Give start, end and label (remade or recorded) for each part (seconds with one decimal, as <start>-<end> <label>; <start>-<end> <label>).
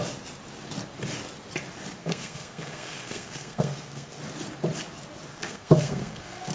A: 0.0-2.0 recorded; 2.0-4.2 remade; 4.2-5.3 recorded; 5.3-6.5 remade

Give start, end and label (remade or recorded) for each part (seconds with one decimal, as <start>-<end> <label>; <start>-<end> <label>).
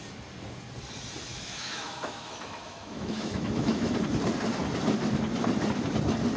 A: 0.0-1.3 recorded; 1.3-3.9 remade; 3.9-6.4 recorded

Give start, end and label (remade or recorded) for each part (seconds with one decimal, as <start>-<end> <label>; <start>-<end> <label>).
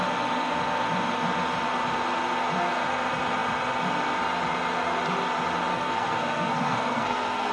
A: 0.0-5.7 recorded; 5.7-7.5 remade